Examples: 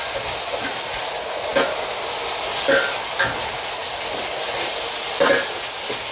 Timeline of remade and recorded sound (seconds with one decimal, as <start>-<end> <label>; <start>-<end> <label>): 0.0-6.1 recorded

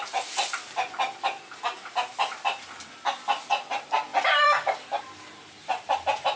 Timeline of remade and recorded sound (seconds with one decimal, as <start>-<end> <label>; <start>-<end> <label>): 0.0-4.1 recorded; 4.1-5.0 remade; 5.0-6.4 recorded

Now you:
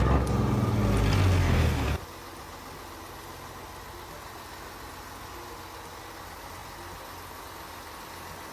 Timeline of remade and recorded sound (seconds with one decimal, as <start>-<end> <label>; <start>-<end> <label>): 0.0-1.4 recorded; 1.4-2.0 remade; 2.0-8.5 recorded